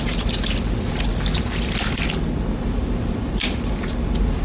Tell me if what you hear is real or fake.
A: real